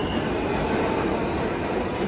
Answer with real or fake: real